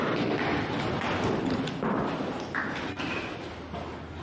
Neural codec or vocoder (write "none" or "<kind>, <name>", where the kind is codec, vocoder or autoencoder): none